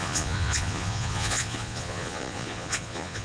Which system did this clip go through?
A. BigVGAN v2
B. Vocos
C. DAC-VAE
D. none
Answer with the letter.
B